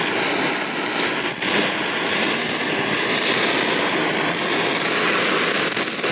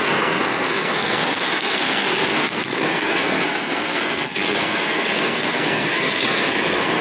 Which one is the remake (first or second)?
second